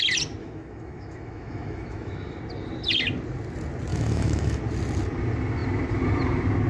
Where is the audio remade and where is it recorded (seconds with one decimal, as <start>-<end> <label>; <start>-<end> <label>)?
0.0-0.4 recorded; 0.4-2.4 remade; 2.4-3.9 recorded; 3.9-4.6 remade; 4.6-6.7 recorded

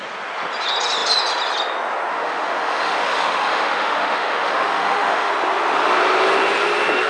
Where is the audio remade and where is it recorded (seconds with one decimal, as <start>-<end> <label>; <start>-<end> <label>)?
0.0-2.1 recorded; 2.1-5.3 remade; 5.3-7.1 recorded